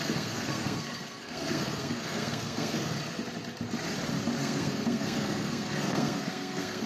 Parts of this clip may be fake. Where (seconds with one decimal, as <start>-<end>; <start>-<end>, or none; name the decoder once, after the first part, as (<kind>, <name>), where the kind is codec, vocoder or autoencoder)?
0.0-3.0 (codec, SNAC); 4.4-6.9